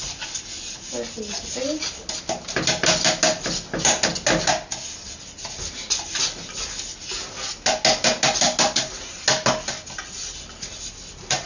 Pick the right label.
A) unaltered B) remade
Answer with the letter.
A